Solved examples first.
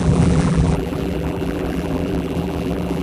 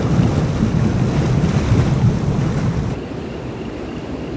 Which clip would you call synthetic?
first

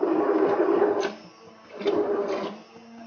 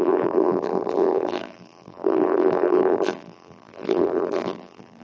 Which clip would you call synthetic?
second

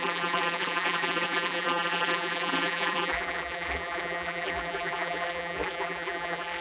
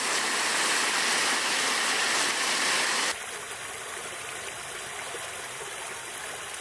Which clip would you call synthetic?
first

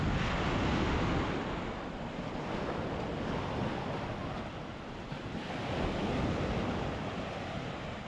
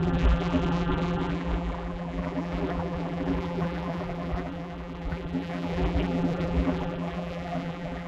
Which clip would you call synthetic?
second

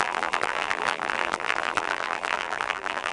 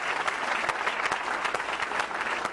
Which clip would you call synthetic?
first